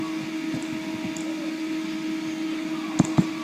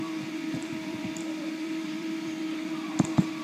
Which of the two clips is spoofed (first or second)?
second